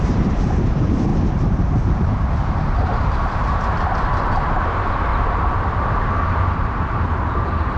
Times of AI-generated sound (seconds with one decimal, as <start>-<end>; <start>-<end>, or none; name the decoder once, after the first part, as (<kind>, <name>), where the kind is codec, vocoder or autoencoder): 0.0-1.1 (vocoder, BigVGAN v2); 1.8-5.1; 6.2-7.8